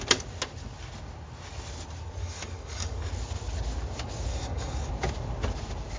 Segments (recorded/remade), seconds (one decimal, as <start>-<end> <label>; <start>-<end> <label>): 0.0-2.2 recorded; 2.2-3.1 remade; 3.1-4.3 recorded; 4.3-4.9 remade; 4.9-6.0 recorded